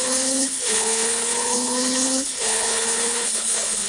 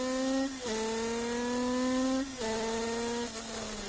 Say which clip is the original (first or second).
second